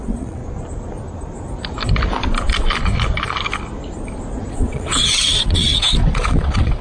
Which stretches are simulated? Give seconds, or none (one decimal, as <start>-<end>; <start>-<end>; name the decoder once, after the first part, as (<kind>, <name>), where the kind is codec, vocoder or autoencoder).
0.0-0.4 (vocoder, WaveNeXt); 4.5-6.8

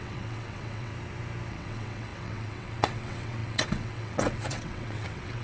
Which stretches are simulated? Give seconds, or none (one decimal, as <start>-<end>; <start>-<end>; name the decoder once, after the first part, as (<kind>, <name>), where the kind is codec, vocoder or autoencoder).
0.0-0.9 (vocoder, WaveNeXt); 1.5-5.4

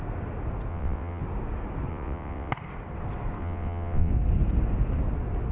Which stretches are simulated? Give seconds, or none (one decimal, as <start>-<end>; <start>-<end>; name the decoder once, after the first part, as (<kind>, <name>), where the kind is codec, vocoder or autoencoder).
0.7-1.2 (vocoder, WaveNeXt); 1.9-2.5; 3.4-4.1